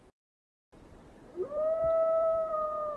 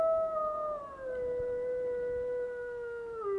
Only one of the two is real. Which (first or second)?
second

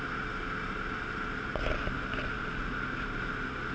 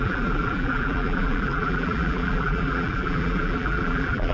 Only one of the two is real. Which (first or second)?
first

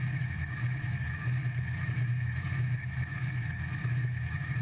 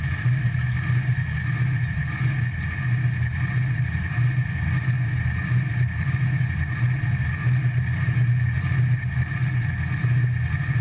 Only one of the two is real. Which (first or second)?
second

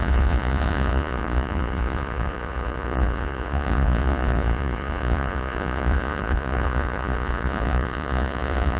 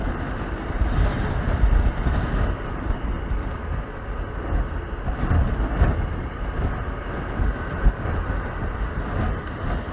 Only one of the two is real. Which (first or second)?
second